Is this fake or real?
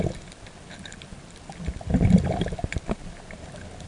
real